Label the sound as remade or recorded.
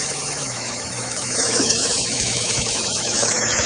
remade